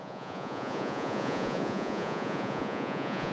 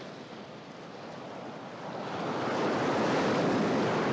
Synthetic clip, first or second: first